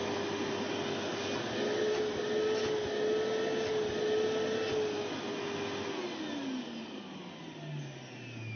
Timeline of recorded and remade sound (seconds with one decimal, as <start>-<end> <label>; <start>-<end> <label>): 0.0-8.6 recorded